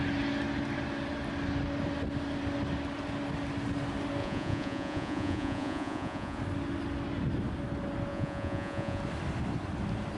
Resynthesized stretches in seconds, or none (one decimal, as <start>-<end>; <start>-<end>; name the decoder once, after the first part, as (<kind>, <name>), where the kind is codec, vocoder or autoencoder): 4.2-6.4 (vocoder, Vocos); 8.1-9.0